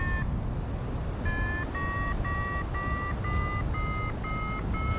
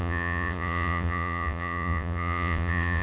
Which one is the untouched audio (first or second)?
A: first